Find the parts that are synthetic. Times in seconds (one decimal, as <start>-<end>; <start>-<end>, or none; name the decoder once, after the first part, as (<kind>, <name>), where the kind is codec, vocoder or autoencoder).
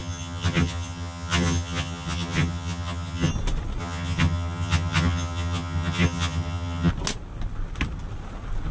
0.0-3.3 (vocoder, HiFi-GAN); 3.8-6.9